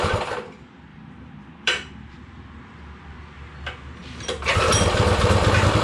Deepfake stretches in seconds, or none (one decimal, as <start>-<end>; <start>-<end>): 0.9-2.1; 4.0-4.7

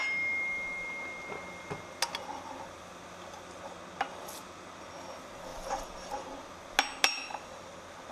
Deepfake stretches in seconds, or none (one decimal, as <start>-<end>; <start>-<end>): 5.5-6.6

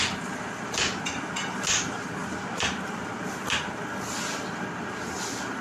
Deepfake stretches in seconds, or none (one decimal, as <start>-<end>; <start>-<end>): none

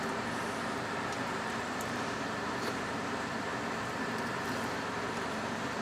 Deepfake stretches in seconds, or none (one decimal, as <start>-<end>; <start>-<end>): 0.0-5.8